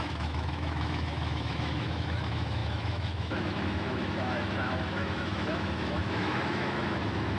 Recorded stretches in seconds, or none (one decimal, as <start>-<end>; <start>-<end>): none